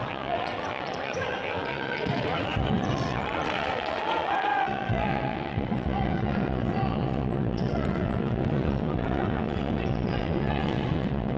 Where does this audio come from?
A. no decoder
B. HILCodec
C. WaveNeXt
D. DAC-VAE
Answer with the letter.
C